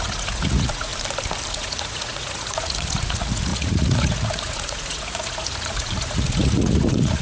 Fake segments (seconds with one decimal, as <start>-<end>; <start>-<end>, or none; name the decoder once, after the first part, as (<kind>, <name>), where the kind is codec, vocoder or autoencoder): 0.0-0.9 (vocoder, Vocos); 1.5-7.2